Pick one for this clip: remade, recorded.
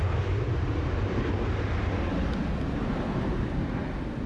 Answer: recorded